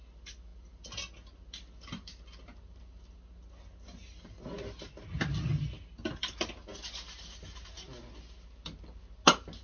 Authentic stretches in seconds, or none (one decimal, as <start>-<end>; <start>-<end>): 0.0-9.6